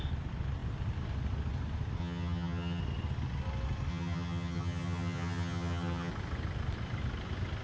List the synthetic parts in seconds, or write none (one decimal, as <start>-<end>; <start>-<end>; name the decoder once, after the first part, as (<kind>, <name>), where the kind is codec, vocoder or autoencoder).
2.0-2.8 (vocoder, HiFi-GAN); 3.9-6.1